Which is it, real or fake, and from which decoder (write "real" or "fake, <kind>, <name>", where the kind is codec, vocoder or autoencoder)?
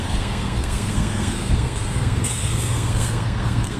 fake, codec, SNAC